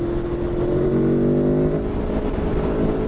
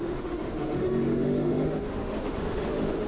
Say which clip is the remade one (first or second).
second